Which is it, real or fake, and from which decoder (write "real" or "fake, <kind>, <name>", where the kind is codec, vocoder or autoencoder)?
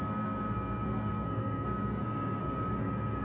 fake, codec, SNAC